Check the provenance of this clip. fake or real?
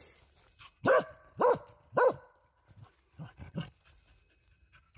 real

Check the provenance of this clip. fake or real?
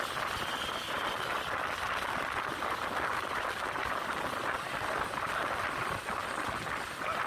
real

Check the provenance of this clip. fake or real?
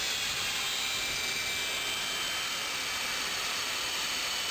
real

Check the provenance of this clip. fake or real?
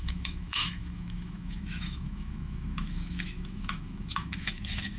fake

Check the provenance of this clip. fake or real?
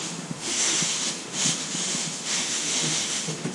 fake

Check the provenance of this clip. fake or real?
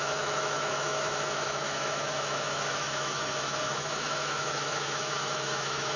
fake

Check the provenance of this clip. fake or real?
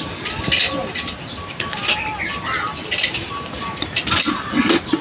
real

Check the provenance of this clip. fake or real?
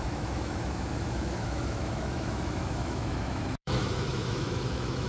fake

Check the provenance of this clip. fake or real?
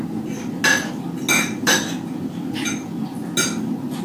real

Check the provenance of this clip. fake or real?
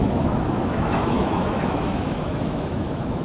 fake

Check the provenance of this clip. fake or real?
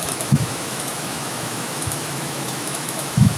fake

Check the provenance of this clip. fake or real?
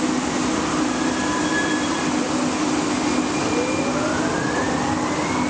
real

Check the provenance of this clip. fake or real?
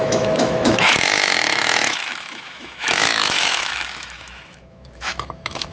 fake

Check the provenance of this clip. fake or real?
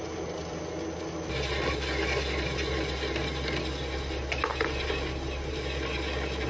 real